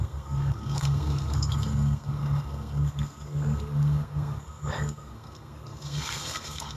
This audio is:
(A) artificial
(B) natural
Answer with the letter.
A